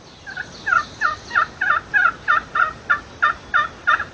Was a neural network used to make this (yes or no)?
no